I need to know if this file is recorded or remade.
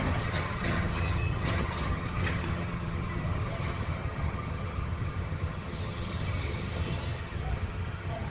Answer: remade